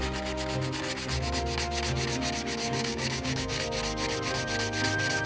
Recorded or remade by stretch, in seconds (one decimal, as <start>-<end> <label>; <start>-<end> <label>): 0.0-2.6 recorded; 2.6-3.6 remade; 3.6-5.3 recorded